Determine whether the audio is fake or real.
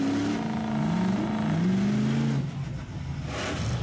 real